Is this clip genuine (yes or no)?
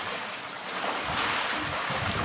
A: yes